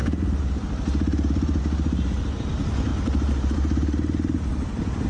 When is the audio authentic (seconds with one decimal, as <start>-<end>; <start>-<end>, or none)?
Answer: 0.0-2.9; 4.5-5.1